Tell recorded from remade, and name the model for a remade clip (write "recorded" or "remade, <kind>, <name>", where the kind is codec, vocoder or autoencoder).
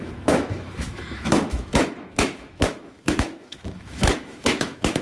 remade, autoencoder, DAC-VAE